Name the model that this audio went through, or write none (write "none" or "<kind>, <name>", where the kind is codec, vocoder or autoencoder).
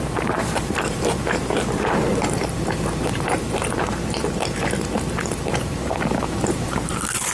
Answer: vocoder, BigVGAN v2